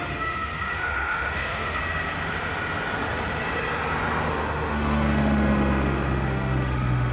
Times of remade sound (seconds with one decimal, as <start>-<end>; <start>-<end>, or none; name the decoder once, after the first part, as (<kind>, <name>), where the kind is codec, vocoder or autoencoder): 0.0-1.8 (autoencoder, DAC-VAE); 4.3-7.1